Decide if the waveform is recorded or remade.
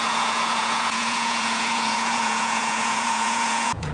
remade